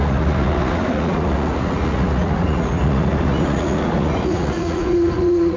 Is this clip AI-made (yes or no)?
yes